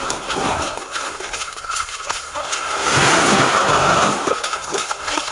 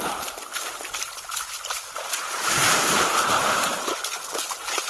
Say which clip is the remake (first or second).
first